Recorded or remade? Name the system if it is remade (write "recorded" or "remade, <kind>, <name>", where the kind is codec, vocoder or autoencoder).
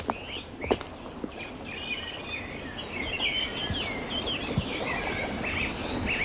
recorded